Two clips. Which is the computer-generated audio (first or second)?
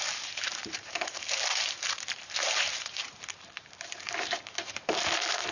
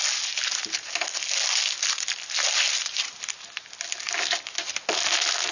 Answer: first